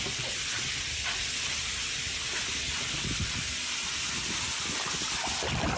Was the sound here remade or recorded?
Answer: recorded